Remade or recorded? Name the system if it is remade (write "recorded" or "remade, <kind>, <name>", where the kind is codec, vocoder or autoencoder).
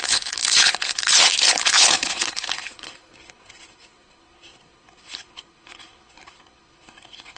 remade, codec, HILCodec